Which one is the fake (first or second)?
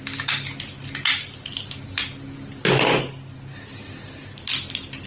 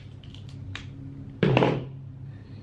second